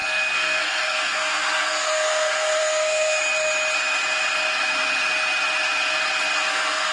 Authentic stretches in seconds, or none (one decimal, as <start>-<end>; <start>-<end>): 3.2-6.5